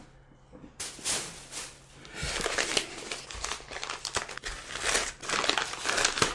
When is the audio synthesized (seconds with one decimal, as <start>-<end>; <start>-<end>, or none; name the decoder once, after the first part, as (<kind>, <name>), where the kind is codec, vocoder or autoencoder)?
none